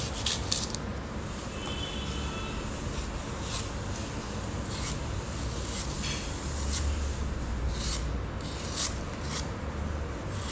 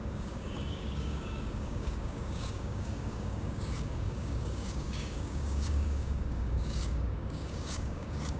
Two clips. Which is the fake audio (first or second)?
second